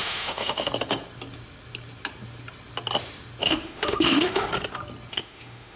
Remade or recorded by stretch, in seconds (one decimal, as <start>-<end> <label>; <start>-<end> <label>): 0.0-0.7 remade; 0.7-3.4 recorded; 3.4-4.5 remade; 4.5-5.1 recorded; 5.1-5.8 remade